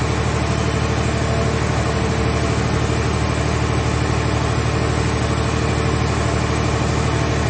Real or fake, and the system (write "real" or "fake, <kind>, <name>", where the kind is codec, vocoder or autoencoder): real